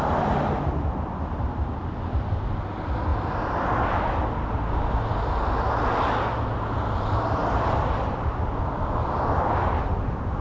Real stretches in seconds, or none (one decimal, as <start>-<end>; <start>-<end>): 0.0-3.1; 3.8-7.4; 8.4-10.4